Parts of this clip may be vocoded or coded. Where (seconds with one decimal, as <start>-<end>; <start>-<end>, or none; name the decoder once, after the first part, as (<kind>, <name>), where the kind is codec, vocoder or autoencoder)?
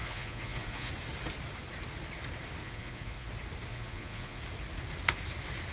0.0-0.9 (vocoder, Vocos); 2.6-3.3; 3.7-4.4